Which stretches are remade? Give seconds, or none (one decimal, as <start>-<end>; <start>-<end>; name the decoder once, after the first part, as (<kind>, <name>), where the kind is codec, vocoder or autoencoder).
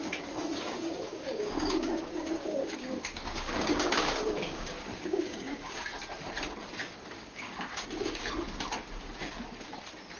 0.5-5.7 (codec, DAC); 6.8-8.3